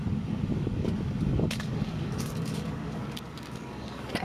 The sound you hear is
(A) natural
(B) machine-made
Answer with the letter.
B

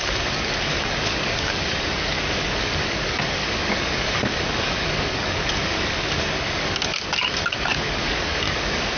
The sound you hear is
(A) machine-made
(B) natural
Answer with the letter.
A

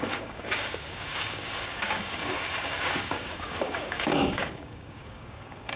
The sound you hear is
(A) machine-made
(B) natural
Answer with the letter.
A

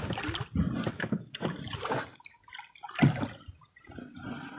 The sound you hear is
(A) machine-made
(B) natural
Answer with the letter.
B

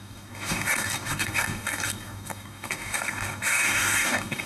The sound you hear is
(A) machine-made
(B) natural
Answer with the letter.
A